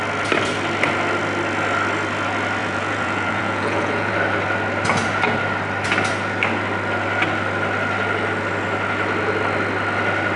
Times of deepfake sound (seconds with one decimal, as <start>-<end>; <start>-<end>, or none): 2.6-4.1